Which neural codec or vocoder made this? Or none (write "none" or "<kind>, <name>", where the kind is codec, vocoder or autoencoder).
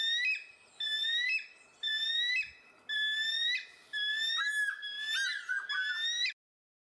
none